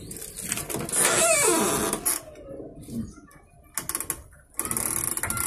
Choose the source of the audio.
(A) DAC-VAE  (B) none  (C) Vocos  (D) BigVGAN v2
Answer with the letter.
B